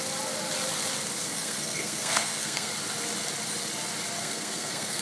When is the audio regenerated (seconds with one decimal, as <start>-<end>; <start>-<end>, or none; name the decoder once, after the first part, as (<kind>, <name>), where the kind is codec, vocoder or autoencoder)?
1.2-2.7 (codec, SNAC); 4.2-5.0

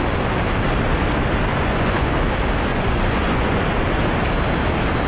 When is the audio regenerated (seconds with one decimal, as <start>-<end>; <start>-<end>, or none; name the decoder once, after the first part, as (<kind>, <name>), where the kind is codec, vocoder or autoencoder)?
1.5-2.1 (vocoder, Vocos); 2.7-3.6

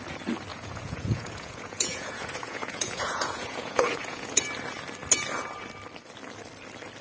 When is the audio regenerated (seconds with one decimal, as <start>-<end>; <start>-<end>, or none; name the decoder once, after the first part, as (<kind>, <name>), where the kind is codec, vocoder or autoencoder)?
0.5-4.4 (vocoder, Vocos)

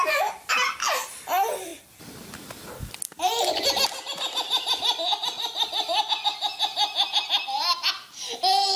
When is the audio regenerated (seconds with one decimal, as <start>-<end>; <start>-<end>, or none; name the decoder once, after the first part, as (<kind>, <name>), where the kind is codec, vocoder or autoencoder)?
1.7-2.6 (vocoder, BigVGAN v2)

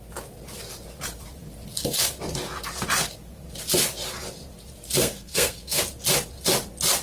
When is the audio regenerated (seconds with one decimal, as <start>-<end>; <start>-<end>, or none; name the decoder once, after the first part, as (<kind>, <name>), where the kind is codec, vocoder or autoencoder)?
5.0-5.8 (codec, SNAC)